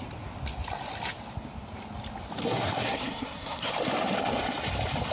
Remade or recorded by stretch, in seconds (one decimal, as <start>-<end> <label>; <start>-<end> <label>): 0.0-2.4 recorded; 2.4-3.7 remade; 3.7-5.1 recorded